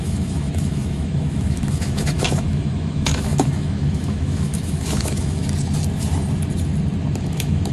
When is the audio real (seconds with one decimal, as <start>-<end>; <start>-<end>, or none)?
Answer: 5.4-7.2